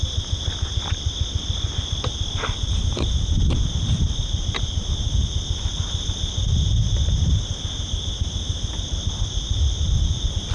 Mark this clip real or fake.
real